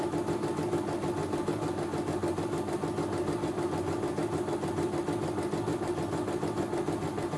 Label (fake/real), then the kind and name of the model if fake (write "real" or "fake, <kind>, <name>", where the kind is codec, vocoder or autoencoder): real